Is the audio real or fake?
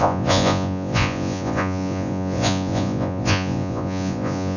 fake